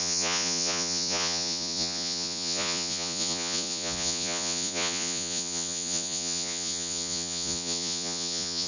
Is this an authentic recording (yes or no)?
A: no